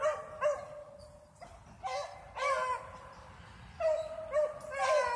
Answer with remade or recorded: recorded